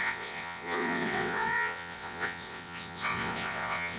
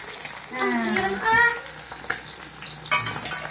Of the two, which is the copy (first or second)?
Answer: first